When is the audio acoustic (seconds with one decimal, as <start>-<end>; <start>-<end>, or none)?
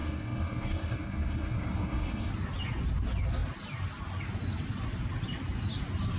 2.3-6.2